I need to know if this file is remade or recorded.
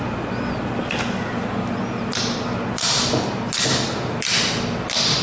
recorded